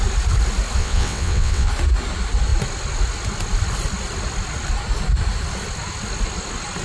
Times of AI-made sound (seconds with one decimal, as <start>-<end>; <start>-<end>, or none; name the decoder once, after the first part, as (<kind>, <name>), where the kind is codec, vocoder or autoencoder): 0.8-1.7 (vocoder, WaveNeXt)